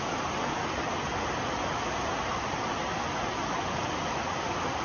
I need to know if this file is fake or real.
real